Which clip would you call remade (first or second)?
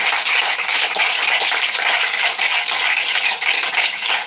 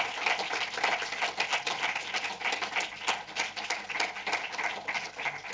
first